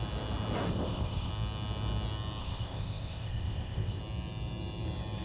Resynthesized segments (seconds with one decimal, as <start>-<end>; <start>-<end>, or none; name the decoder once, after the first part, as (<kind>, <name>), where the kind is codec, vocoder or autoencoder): 0.7-1.3 (codec, ZipCodec); 2.4-4.0